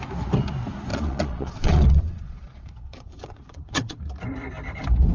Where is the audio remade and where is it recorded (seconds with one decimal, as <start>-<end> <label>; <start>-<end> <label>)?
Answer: 0.0-0.9 recorded; 0.9-4.0 remade; 4.0-5.1 recorded

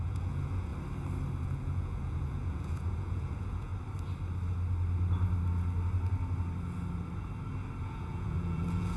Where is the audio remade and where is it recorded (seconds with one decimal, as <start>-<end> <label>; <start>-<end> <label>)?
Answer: 0.0-0.7 remade; 0.7-1.3 recorded; 1.3-3.7 remade; 3.7-7.8 recorded; 7.8-9.0 remade

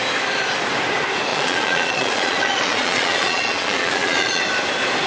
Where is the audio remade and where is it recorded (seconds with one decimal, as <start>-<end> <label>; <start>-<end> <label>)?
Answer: 0.0-1.3 recorded; 1.3-4.4 remade; 4.4-5.1 recorded

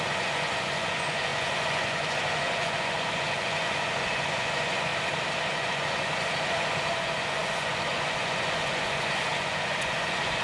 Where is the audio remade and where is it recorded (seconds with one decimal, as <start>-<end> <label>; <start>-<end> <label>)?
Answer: 0.0-4.9 remade; 4.9-5.5 recorded; 5.5-10.4 remade

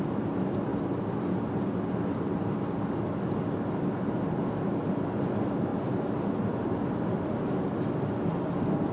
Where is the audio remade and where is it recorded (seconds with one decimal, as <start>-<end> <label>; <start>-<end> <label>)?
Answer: 0.0-8.9 recorded

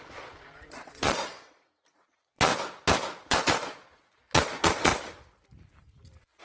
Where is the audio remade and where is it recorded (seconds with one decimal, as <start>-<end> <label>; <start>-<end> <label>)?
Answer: 0.0-2.5 remade; 2.5-3.3 recorded; 3.3-4.9 remade; 4.9-6.4 recorded